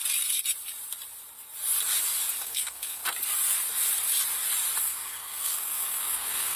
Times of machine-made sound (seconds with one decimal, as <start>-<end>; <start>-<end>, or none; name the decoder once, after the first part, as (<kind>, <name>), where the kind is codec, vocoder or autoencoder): 2.4-3.0 (codec, SNAC); 4.8-6.6